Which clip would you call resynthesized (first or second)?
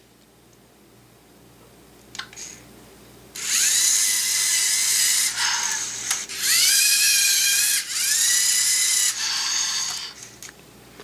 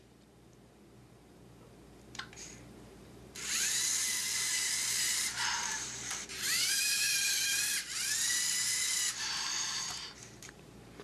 second